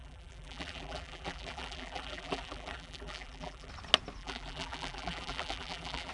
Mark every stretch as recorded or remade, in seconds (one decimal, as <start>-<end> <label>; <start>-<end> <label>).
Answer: 0.0-3.7 remade; 3.7-4.2 recorded; 4.2-6.1 remade